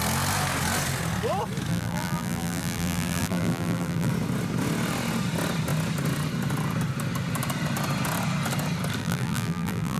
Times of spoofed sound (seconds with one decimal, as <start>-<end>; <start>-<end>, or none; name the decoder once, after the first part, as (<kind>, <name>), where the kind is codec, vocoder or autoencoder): 1.7-4.1 (vocoder, BigVGAN v2); 9.0-10.0